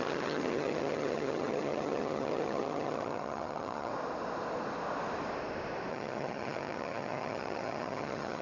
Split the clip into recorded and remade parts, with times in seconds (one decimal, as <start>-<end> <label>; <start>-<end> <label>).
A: 0.0-3.9 remade; 3.9-5.9 recorded; 5.9-8.4 remade